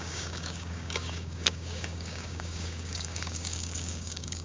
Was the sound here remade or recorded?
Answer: remade